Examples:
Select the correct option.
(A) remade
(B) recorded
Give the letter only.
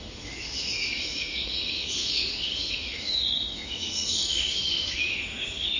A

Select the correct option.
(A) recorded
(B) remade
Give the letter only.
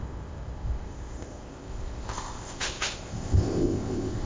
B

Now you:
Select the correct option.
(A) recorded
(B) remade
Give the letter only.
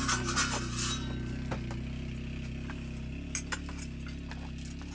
A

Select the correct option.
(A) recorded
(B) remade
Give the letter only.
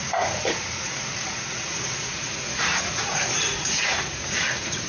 B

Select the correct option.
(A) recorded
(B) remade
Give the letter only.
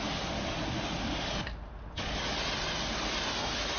A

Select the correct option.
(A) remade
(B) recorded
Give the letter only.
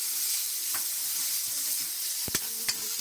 B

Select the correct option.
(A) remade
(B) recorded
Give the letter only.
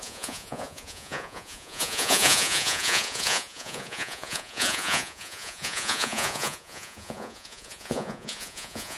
A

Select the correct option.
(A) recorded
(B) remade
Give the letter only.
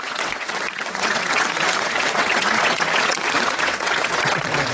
B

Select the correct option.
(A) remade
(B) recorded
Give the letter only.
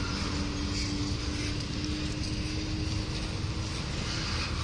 B